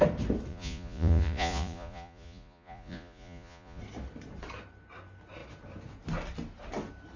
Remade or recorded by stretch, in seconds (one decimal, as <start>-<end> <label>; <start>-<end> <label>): 0.0-0.5 recorded; 0.5-3.8 remade; 3.8-7.2 recorded